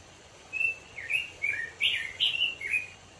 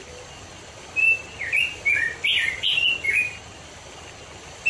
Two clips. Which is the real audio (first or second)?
second